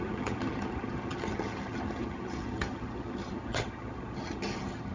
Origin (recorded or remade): remade